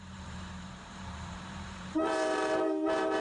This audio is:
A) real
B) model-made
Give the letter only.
B